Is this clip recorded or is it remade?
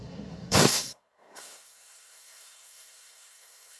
remade